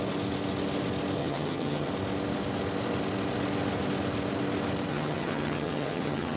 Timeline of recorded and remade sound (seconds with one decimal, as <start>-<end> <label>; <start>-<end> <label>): 0.0-1.2 recorded; 1.2-1.9 remade; 1.9-4.9 recorded; 4.9-6.4 remade